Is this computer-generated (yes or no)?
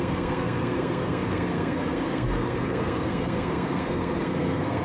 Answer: yes